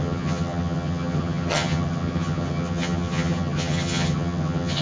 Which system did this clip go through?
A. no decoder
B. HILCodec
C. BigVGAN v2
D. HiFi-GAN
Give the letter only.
D